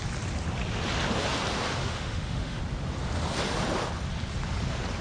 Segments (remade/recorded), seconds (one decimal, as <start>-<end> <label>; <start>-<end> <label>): 0.0-1.8 recorded; 1.8-2.6 remade; 2.6-5.0 recorded